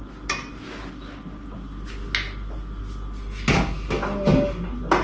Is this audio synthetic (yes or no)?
no